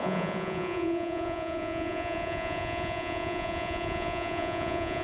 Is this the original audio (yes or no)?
no